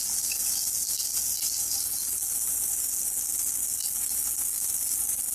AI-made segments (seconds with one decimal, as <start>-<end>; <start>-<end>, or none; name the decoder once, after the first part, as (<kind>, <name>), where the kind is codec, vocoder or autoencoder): none